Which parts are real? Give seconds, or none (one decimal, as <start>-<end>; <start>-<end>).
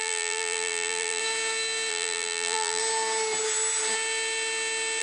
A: 1.2-1.9; 2.8-5.0